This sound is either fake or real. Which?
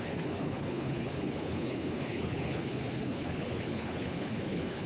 fake